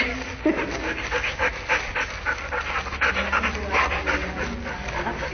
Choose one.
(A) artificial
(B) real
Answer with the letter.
B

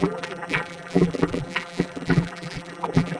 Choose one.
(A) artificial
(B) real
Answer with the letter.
A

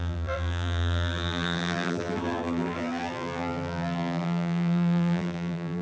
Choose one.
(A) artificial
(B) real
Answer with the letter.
A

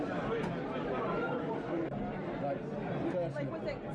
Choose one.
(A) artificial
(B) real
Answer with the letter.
B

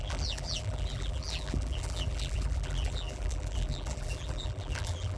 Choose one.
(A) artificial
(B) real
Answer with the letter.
A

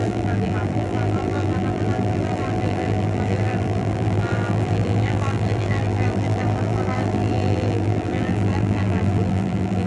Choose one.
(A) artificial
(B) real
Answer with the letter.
A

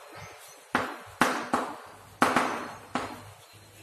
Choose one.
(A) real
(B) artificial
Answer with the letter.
A